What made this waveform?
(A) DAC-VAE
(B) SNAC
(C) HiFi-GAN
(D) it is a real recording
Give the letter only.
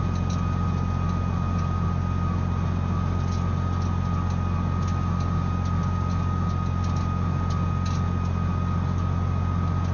D